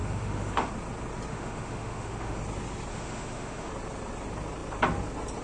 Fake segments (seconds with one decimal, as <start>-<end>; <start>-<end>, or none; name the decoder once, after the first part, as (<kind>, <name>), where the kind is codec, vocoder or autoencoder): 0.0-0.7 (autoencoder, DAC-VAE); 1.3-2.4; 2.9-3.7